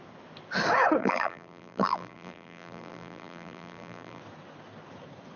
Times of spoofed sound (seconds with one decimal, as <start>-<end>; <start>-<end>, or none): 1.0-4.2